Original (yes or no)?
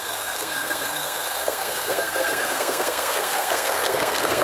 no